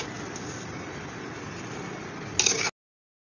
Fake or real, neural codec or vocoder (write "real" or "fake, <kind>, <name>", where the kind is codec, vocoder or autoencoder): real